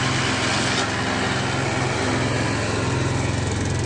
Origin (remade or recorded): recorded